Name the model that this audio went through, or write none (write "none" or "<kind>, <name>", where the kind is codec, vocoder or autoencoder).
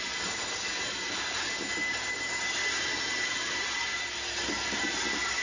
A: none